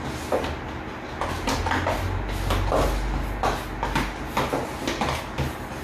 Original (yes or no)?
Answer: yes